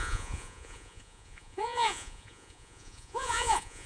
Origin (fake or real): fake